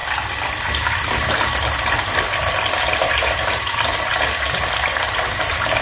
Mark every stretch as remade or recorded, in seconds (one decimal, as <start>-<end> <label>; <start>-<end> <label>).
0.0-5.8 recorded